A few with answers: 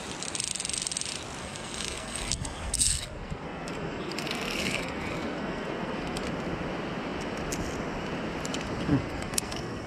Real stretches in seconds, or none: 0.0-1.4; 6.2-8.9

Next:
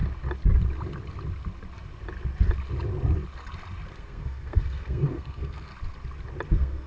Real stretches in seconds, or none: 0.0-3.9; 5.7-6.5

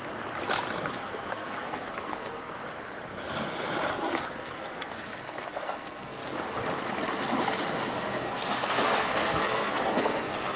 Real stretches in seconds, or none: 0.0-0.9; 2.6-3.9; 6.2-7.9

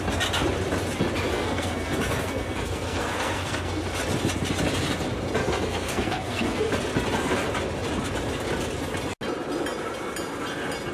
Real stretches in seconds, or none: 0.0-1.3; 3.7-5.4; 6.7-10.9

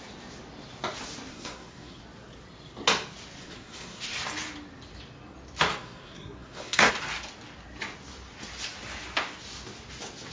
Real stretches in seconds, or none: 0.0-1.3; 2.0-3.4; 4.0-5.7; 6.9-10.3

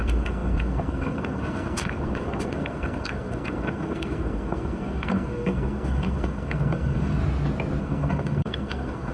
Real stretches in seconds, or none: 7.2-7.8

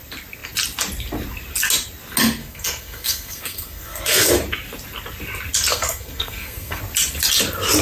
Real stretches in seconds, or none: 0.0-2.4; 4.3-5.7; 6.8-7.8

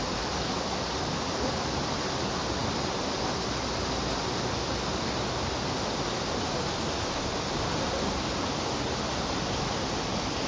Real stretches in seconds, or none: 0.0-10.5